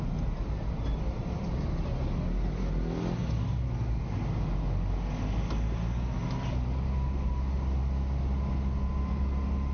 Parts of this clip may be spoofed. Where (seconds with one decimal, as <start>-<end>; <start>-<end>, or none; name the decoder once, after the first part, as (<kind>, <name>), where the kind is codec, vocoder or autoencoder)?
none